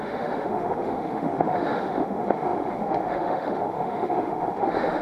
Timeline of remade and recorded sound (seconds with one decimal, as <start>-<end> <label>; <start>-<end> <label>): 0.0-5.0 remade